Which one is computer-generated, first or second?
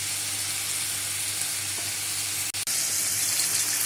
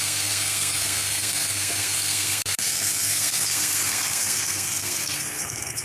second